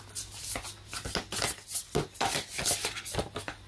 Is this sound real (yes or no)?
yes